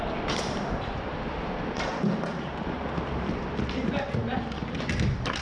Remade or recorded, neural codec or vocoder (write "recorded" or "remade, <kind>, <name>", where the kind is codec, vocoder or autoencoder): recorded